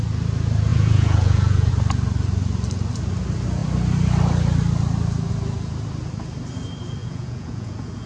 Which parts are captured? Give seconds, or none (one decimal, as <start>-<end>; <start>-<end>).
0.0-0.7; 1.7-7.0